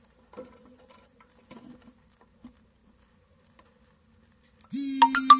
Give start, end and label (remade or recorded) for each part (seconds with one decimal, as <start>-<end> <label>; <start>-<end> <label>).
0.0-5.4 recorded